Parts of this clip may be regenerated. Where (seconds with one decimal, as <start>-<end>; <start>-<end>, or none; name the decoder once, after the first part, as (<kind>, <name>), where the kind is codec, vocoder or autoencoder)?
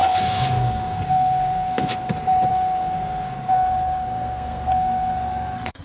0.0-2.1 (codec, SNAC); 2.5-5.8